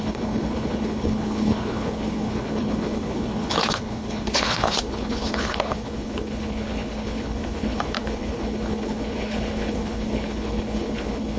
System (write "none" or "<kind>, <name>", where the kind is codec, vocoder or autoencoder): codec, HILCodec